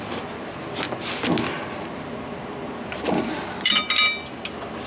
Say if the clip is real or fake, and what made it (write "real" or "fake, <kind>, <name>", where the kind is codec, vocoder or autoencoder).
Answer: real